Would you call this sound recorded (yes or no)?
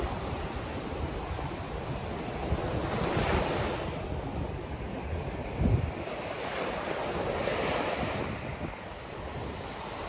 yes